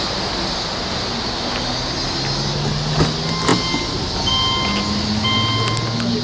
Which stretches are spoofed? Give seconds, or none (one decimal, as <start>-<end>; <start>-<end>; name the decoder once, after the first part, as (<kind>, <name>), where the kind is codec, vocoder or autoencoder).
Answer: none